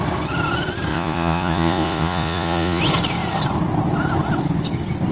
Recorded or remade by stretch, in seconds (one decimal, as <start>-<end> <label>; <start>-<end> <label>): 0.0-0.9 recorded; 0.9-2.8 remade; 2.8-5.1 recorded